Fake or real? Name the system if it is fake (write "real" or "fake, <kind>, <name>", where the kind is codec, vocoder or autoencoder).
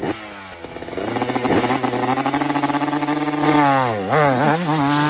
real